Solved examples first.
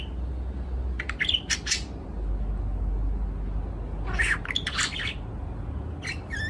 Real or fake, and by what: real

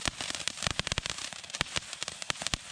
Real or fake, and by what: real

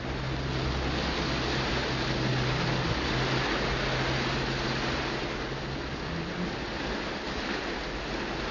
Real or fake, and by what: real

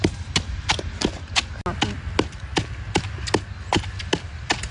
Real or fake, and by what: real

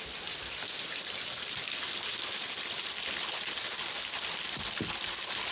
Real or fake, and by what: real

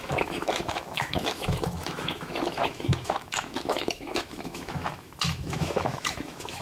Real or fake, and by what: fake, autoencoder, DAC-VAE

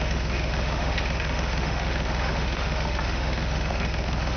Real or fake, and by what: fake, autoencoder, DAC-VAE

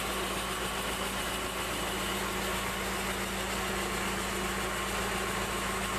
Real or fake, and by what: real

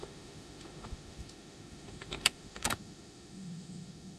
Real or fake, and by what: fake, autoencoder, DAC-VAE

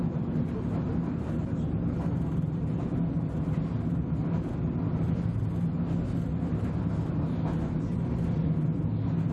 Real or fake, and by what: real